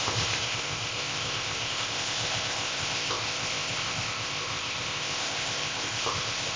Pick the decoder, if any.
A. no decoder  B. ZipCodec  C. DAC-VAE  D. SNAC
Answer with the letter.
B